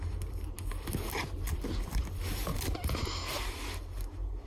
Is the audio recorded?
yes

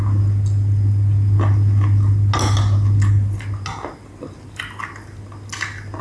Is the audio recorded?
yes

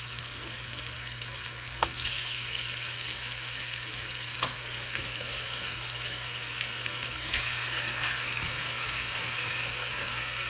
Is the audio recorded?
no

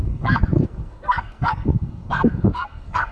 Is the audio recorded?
no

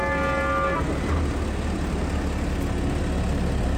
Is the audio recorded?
yes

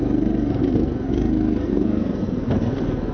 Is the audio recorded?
no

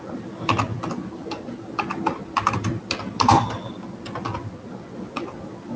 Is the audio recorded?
yes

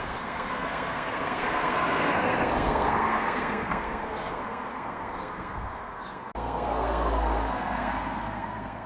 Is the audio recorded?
no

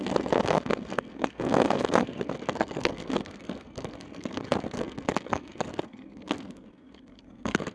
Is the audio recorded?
no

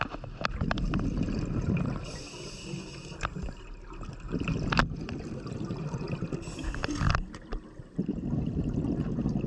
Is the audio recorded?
yes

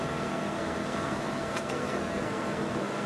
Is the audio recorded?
no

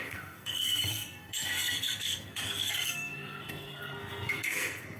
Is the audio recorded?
no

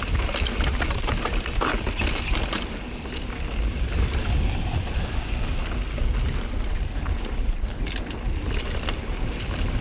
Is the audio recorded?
yes